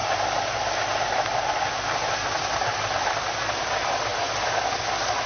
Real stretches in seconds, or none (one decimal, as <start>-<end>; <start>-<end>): 0.0-5.3